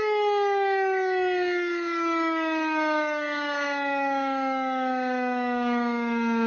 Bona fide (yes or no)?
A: no